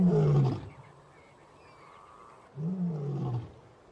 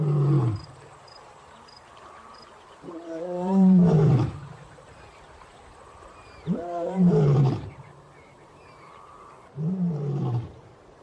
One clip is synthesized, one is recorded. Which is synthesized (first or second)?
second